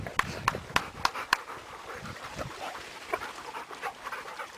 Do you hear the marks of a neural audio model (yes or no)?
no